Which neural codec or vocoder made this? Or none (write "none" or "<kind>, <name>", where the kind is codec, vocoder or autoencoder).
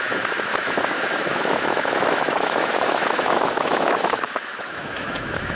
autoencoder, DAC-VAE